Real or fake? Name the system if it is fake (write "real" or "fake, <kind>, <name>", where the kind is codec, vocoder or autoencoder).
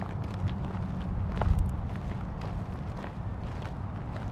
real